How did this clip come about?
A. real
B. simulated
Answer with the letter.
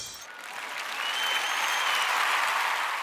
A